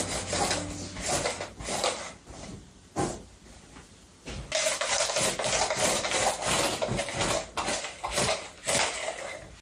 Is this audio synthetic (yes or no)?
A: no